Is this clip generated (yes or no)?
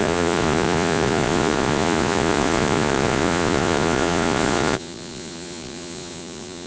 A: yes